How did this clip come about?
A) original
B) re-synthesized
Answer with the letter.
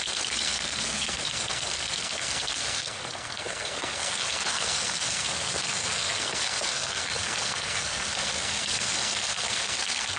B